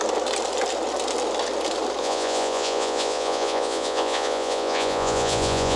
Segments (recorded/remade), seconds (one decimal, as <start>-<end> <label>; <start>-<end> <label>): 0.0-2.0 recorded; 2.0-5.8 remade